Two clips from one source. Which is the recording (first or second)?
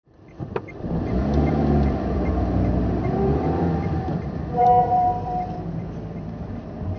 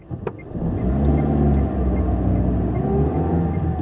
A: second